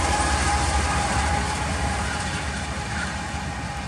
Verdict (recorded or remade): recorded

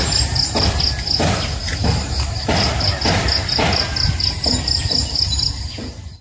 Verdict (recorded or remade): recorded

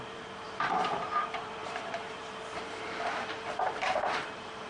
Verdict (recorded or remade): remade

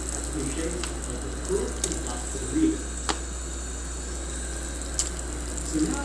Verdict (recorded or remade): recorded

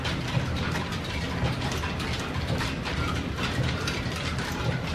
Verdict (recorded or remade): recorded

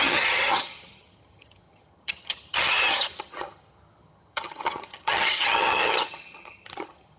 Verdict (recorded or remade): remade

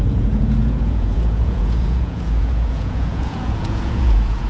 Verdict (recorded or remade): remade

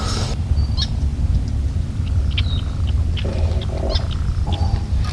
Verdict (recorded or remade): recorded